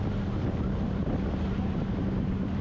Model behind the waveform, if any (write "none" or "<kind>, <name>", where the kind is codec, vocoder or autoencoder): none